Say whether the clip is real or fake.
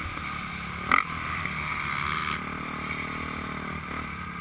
real